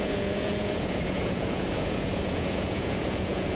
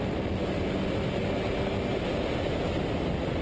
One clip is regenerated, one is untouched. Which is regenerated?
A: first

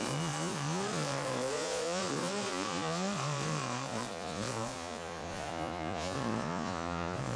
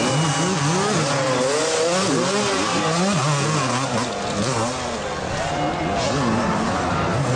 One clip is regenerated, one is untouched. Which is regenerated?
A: first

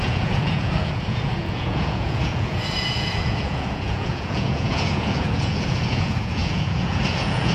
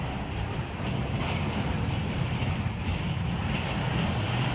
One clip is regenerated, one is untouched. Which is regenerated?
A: first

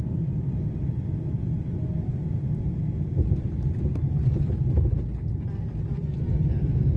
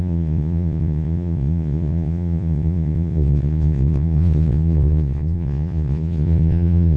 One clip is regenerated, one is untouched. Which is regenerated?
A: second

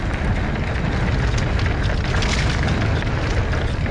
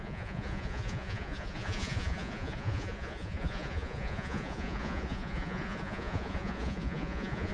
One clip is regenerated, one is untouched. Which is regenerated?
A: second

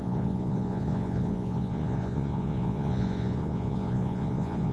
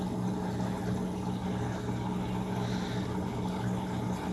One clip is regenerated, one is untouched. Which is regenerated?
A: first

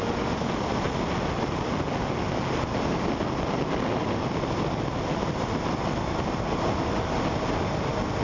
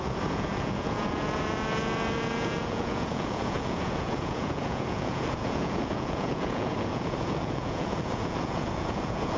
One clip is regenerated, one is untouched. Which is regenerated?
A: second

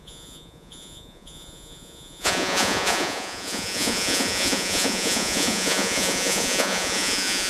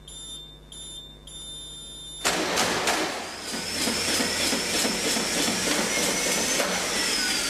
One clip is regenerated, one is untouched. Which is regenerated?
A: first